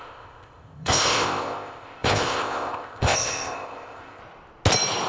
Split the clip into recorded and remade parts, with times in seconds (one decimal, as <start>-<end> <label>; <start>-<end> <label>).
0.0-4.2 remade; 4.2-5.1 recorded